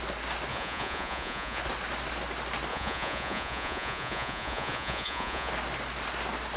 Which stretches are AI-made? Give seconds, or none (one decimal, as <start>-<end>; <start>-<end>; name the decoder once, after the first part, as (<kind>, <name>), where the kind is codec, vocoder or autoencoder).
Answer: 0.5-1.6 (vocoder, Vocos); 2.7-5.5